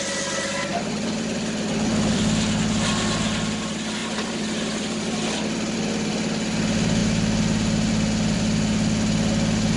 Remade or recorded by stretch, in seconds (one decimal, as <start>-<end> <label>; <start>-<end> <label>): 0.0-0.7 recorded; 0.7-2.9 remade; 2.9-4.0 recorded; 4.0-6.1 remade; 6.1-9.8 recorded